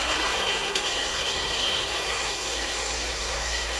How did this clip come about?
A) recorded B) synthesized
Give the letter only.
B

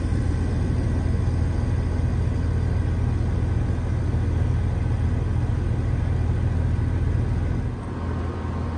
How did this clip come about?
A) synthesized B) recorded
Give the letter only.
B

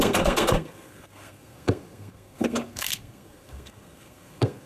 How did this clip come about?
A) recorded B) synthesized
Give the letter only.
B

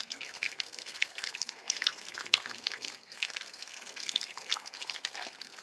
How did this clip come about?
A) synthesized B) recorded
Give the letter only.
A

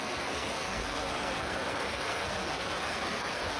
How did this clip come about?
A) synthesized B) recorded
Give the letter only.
A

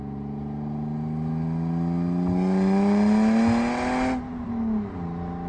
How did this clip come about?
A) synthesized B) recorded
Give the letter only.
B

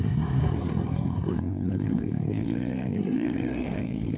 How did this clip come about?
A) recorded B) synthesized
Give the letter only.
B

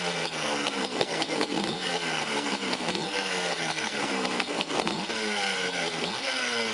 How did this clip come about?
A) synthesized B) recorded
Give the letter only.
A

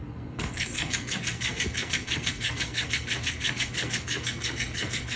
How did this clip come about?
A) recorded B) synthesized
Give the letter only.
B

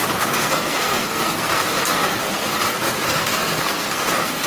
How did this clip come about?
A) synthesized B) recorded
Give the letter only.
A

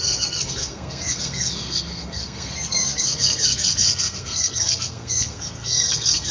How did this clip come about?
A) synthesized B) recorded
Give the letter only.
A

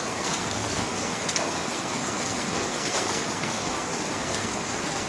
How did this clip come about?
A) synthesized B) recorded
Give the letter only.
A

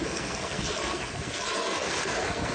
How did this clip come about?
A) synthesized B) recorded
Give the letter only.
A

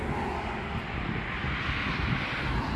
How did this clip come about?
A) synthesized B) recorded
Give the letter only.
B